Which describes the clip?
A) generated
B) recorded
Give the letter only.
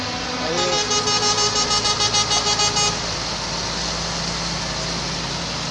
B